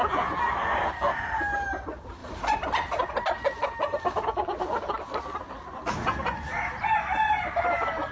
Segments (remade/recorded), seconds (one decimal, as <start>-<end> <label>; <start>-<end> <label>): 0.0-8.1 recorded

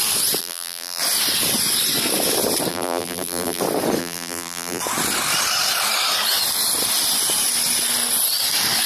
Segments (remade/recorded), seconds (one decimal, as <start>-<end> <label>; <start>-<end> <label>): 0.0-0.4 recorded; 0.4-1.0 remade; 1.0-2.7 recorded; 2.7-3.6 remade; 3.6-4.0 recorded; 4.0-4.8 remade; 4.8-8.9 recorded

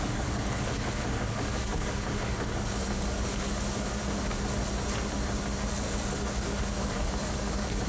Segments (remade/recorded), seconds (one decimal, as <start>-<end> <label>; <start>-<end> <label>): 0.0-4.0 remade; 4.0-6.1 recorded; 6.1-7.9 remade

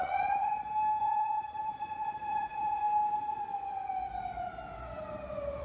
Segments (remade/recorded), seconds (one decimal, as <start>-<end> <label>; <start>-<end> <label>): 0.0-0.5 remade; 0.5-1.0 recorded; 1.0-2.8 remade; 2.8-5.6 recorded

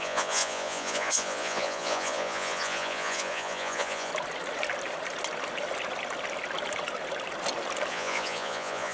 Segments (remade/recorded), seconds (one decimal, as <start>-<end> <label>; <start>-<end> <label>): 0.0-4.1 remade; 4.1-7.9 recorded; 7.9-8.9 remade

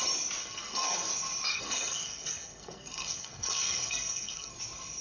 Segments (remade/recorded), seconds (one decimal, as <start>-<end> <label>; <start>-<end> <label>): 0.0-0.4 recorded; 0.4-1.1 remade; 1.1-1.5 recorded; 1.5-4.5 remade; 4.5-5.0 recorded

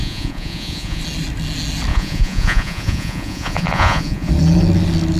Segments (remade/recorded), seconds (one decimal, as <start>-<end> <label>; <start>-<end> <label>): 0.0-1.0 remade; 1.0-1.9 recorded; 1.9-4.3 remade; 4.3-5.2 recorded